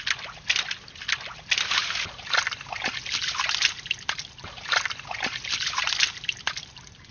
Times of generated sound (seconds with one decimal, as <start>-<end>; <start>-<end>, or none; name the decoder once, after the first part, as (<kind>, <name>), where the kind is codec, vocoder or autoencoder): none